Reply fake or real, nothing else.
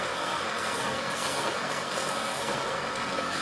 fake